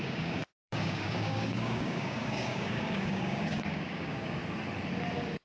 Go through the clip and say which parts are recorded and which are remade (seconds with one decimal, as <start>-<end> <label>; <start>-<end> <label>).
0.0-4.4 remade; 4.4-5.4 recorded